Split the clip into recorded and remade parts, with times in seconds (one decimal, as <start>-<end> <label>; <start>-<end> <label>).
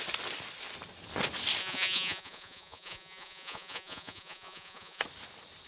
0.0-1.6 recorded; 1.6-5.0 remade; 5.0-5.7 recorded